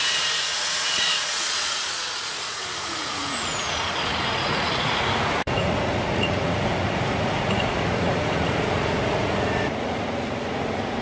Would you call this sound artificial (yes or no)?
yes